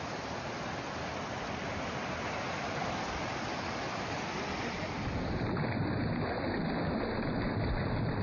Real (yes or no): yes